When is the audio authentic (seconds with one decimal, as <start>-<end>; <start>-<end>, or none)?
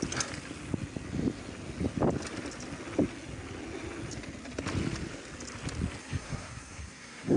0.0-6.0